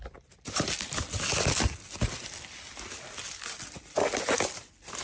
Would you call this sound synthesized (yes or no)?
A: no